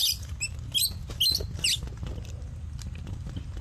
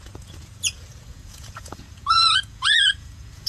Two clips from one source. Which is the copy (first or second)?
second